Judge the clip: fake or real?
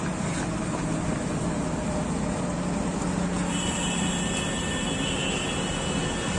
real